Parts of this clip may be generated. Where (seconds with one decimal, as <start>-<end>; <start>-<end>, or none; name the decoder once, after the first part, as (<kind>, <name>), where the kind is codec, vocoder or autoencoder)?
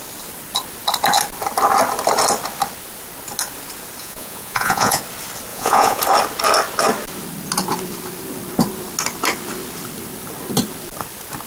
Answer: 4.0-5.0 (vocoder, Vocos); 5.5-6.0